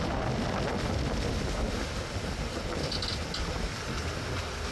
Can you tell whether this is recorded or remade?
recorded